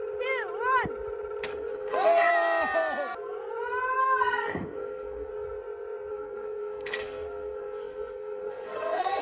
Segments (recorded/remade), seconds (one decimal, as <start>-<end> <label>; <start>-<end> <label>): 0.0-1.5 recorded; 1.5-2.3 remade; 2.3-4.0 recorded; 4.0-5.3 remade; 5.3-6.1 recorded; 6.1-9.2 remade